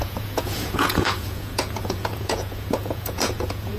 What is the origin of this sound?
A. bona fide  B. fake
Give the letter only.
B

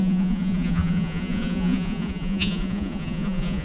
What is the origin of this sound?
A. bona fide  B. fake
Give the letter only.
B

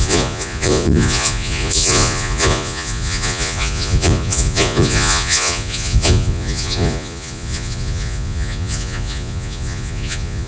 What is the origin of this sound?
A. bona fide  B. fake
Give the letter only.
B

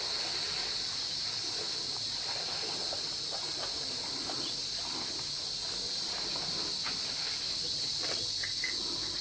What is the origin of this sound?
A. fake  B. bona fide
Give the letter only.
B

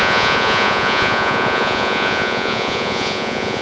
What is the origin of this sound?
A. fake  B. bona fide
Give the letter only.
A